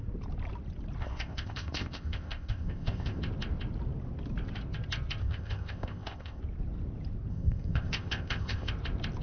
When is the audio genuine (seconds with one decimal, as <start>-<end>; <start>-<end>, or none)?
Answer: 0.0-1.0; 3.2-5.2; 6.4-7.3; 8.7-9.2